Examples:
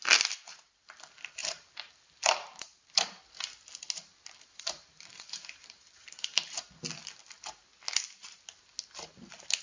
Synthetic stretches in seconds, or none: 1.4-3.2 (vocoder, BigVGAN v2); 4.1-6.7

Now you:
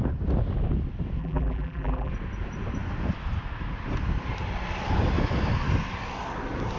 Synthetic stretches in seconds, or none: 1.2-2.1 (vocoder, BigVGAN v2)

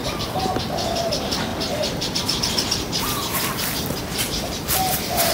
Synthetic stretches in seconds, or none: 0.6-5.3 (vocoder, BigVGAN v2)

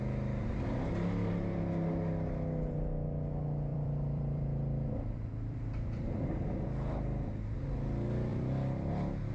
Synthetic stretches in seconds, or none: 3.7-6.3 (vocoder, BigVGAN v2); 8.3-9.3

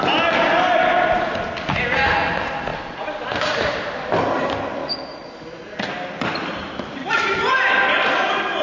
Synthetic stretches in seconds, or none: none

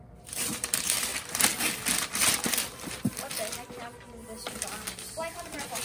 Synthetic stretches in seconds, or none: 0.0-1.1 (vocoder, BigVGAN v2); 3.5-4.2; 5.3-5.8